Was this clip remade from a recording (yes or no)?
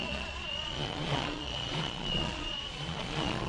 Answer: yes